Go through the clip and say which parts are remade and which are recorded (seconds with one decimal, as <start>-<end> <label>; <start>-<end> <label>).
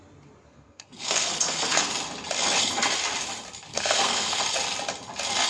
0.0-0.5 recorded; 0.5-1.9 remade; 1.9-3.7 recorded; 3.7-4.4 remade; 4.4-5.5 recorded